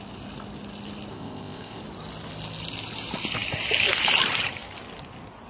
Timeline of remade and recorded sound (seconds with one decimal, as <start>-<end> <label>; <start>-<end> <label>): 0.0-1.1 recorded; 1.1-1.8 remade; 1.8-5.5 recorded